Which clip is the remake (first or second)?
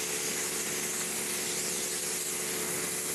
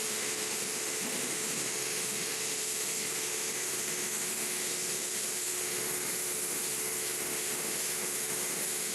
second